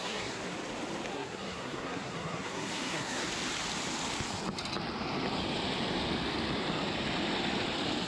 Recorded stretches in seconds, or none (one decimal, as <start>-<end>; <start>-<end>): 0.4-1.1; 3.3-8.1